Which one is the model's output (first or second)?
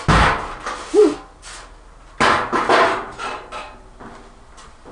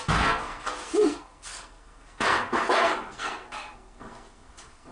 second